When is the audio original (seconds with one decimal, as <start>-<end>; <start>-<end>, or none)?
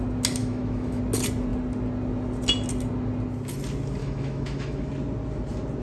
0.0-0.4; 1.0-4.0; 4.9-5.8